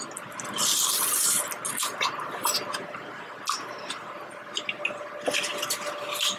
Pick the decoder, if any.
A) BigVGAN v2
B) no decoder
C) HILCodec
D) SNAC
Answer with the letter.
B